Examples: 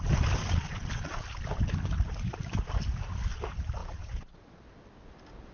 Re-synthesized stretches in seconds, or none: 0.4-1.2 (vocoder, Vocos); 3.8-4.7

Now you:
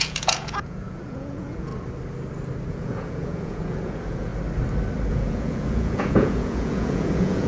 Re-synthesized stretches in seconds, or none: 0.0-1.7 (vocoder, Vocos); 2.7-4.3; 5.1-7.5

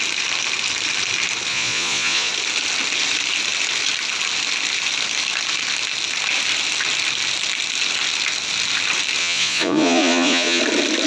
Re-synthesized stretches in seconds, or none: 1.5-2.3 (vocoder, Vocos); 9.2-10.6

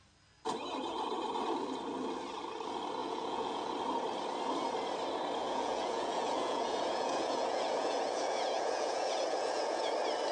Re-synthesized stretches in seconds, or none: 3.0-3.7 (vocoder, Vocos); 5.4-9.9